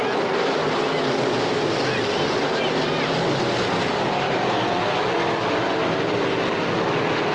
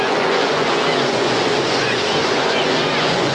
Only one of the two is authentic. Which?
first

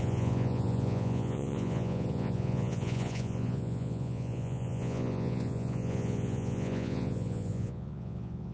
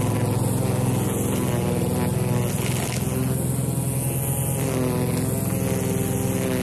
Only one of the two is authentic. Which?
second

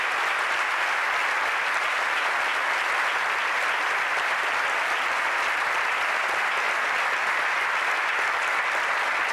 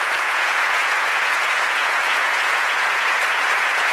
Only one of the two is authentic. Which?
first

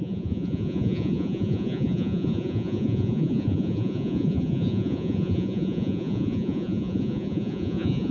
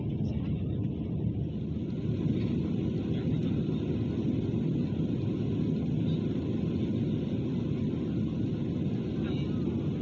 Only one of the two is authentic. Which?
second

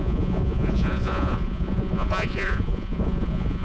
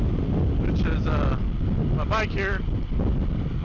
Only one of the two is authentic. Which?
second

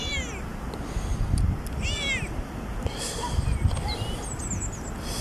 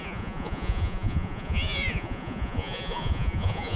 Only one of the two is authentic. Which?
first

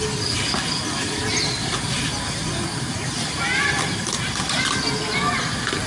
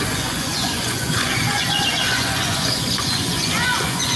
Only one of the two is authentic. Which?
first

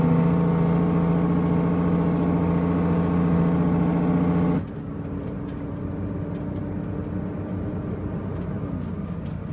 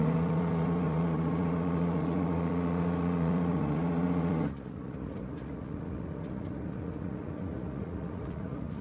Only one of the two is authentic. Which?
first